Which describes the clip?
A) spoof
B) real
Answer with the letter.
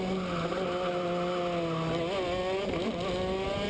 B